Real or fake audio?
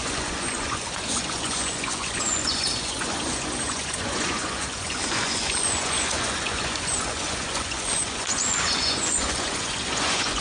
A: fake